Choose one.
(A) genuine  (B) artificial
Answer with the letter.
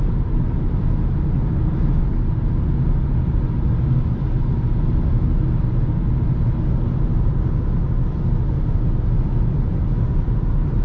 A